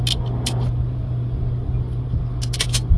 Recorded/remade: recorded